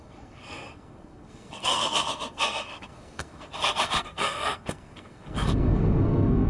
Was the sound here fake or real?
fake